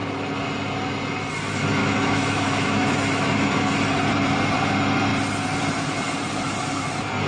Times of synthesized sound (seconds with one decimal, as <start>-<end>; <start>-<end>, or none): 1.8-3.7